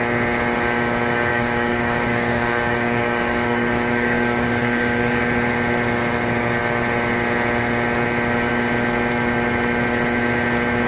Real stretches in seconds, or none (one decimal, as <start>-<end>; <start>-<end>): 0.0-1.3; 5.2-10.9